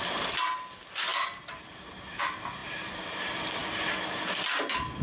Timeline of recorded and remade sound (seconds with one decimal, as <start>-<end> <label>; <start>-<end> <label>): 0.0-5.0 recorded